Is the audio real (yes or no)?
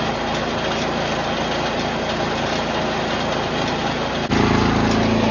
yes